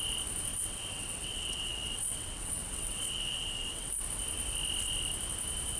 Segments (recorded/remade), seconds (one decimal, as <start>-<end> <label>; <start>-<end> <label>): 0.0-0.5 recorded; 0.5-4.0 remade; 4.0-5.8 recorded